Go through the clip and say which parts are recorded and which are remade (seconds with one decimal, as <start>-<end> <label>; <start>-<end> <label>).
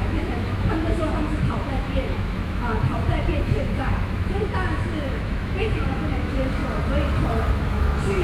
0.0-6.6 remade; 6.6-7.5 recorded; 7.5-8.2 remade